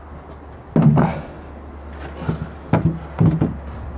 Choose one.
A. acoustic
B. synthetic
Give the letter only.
A